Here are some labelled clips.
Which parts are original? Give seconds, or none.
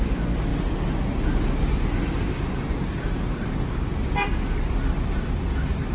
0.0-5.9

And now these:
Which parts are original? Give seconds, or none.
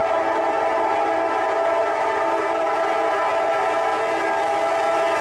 2.7-5.2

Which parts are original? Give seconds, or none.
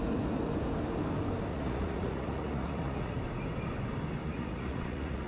0.0-1.5; 3.2-4.2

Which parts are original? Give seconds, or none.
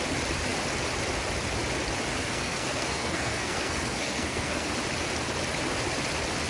0.0-2.1; 4.7-6.5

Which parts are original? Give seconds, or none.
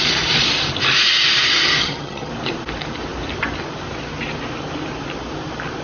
0.0-1.8; 2.3-5.8